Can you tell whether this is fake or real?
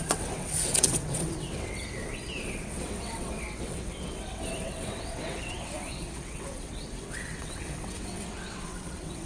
fake